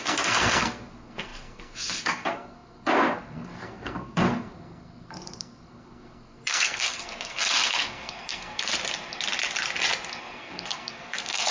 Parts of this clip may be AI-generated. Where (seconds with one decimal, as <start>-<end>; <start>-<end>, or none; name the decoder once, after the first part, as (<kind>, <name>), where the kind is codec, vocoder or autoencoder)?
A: 0.0-8.7 (codec, SNAC); 10.2-11.5